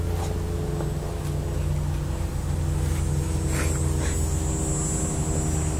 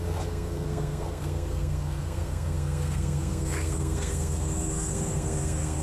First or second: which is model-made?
second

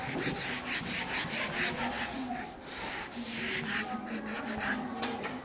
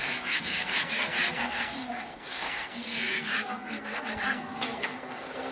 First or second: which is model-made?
second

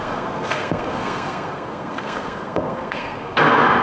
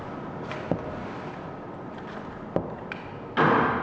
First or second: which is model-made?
first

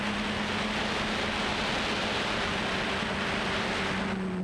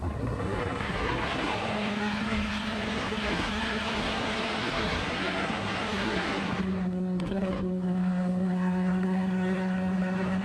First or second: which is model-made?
second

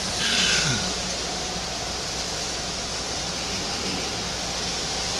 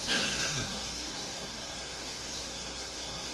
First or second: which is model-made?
second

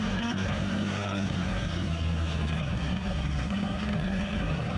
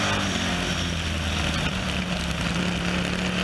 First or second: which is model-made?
first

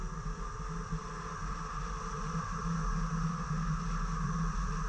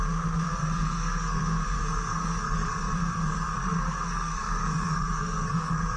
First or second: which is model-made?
second